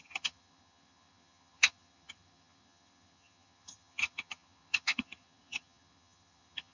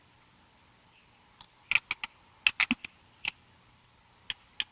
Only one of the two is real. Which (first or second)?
second